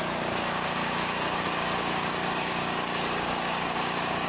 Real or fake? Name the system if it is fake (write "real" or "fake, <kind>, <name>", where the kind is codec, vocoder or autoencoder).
fake, codec, DAC